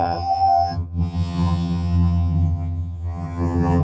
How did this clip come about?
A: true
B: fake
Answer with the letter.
B